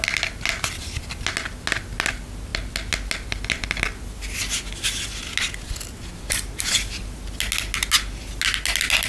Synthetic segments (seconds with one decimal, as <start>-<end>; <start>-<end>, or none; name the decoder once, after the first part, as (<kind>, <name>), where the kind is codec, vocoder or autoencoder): none